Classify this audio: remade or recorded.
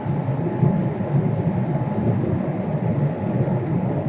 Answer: recorded